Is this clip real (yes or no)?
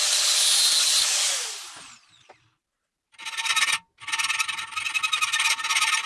yes